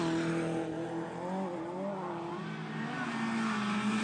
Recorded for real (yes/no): yes